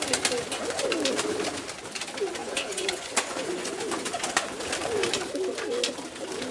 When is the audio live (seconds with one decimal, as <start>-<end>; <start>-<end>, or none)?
0.0-2.4; 4.3-6.5